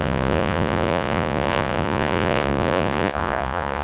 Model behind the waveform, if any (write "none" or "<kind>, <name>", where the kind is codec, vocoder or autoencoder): vocoder, Vocos